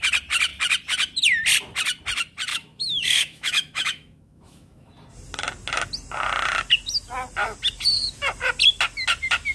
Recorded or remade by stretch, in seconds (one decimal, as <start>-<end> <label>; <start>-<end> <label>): 0.0-2.5 recorded; 2.5-4.9 remade; 4.9-9.5 recorded